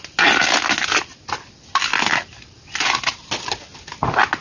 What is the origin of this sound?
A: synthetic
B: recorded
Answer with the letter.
B